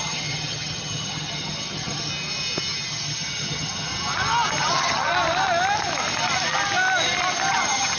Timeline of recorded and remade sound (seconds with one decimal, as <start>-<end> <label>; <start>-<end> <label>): 0.0-2.1 remade; 2.1-2.9 recorded; 2.9-3.9 remade; 3.9-4.6 recorded; 4.6-5.1 remade; 5.1-7.5 recorded; 7.5-8.0 remade